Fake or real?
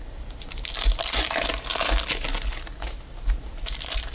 real